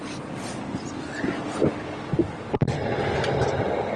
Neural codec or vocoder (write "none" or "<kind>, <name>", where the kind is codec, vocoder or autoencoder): none